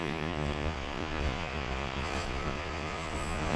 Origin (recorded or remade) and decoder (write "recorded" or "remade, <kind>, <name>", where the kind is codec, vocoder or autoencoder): remade, vocoder, Vocos